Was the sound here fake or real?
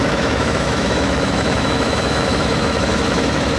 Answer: fake